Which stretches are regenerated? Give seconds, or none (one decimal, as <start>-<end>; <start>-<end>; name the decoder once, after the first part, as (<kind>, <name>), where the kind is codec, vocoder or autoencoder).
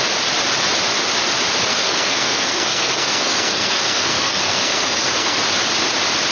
1.7-5.4 (codec, SNAC)